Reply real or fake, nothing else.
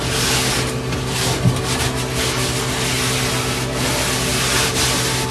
real